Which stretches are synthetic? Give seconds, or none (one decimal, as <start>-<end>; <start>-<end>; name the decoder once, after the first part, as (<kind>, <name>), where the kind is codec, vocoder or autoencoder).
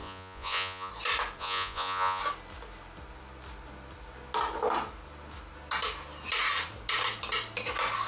0.0-0.9 (vocoder, Vocos); 1.4-2.2